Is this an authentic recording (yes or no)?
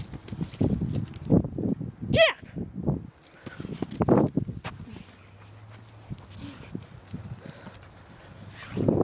yes